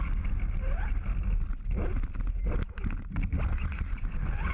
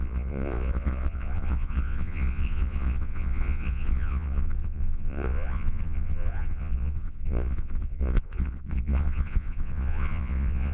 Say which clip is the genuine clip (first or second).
first